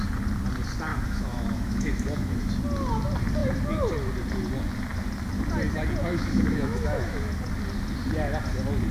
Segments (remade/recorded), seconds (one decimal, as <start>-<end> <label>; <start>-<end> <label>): 0.0-0.9 recorded; 0.9-2.5 remade; 2.5-6.1 recorded; 6.1-7.3 remade; 7.3-8.9 recorded